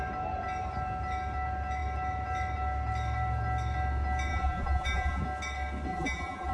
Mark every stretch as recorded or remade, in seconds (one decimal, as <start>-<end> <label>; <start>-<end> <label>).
0.0-4.3 recorded; 4.3-5.2 remade; 5.2-5.9 recorded; 5.9-6.5 remade